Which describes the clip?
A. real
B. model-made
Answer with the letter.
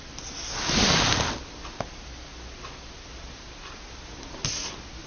A